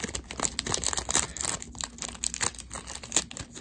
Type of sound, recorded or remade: recorded